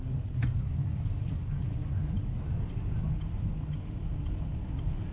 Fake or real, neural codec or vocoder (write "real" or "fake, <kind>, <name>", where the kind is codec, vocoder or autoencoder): real